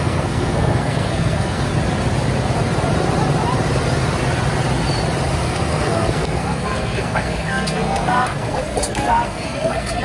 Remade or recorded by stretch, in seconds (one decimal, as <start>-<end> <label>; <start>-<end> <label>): 0.0-1.7 remade; 1.7-5.4 recorded; 5.4-10.0 remade